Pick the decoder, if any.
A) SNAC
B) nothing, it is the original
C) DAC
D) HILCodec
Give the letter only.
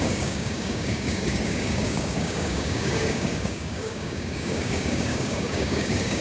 C